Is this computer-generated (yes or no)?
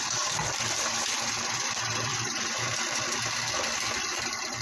yes